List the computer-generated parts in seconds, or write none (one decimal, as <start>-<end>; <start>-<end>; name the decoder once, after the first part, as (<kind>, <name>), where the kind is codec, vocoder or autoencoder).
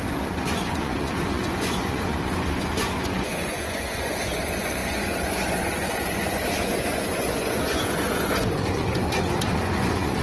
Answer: 0.0-10.2 (vocoder, Vocos)